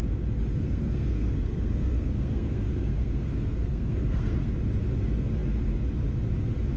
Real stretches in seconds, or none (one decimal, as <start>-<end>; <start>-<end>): 0.0-0.5; 4.5-6.8